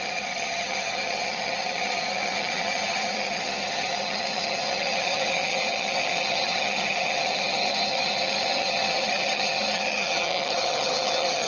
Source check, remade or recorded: remade